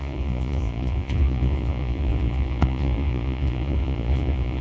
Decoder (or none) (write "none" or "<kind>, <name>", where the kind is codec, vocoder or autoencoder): vocoder, Vocos